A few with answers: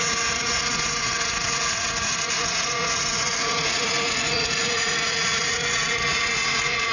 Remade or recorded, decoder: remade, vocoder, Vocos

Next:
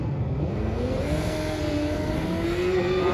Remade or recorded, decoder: remade, codec, SNAC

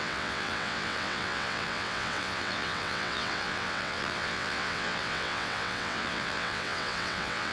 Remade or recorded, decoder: remade, vocoder, WaveNeXt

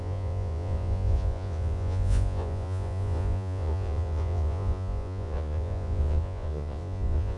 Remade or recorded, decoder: remade, vocoder, Vocos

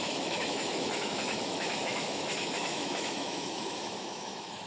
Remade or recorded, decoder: remade, autoencoder, DAC-VAE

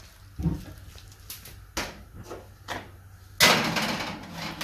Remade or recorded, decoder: recorded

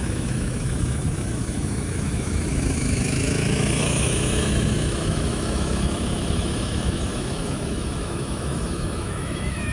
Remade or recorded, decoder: remade, autoencoder, DAC-VAE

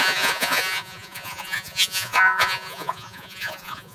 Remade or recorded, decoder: remade, vocoder, Vocos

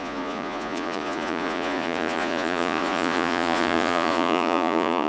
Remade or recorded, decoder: remade, vocoder, Vocos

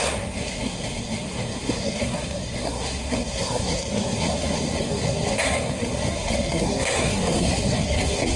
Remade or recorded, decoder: remade, codec, SNAC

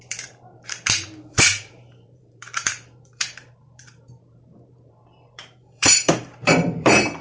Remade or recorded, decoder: remade, vocoder, BigVGAN v2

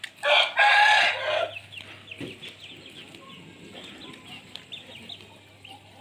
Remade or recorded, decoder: recorded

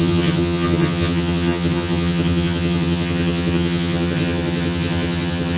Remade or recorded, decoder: remade, vocoder, HiFi-GAN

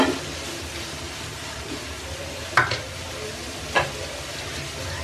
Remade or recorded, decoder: recorded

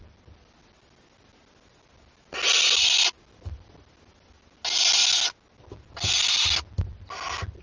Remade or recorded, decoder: recorded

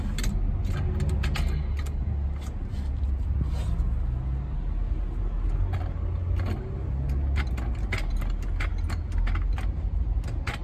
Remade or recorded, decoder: recorded